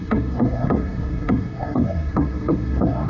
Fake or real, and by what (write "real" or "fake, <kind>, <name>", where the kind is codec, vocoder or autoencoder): fake, codec, SNAC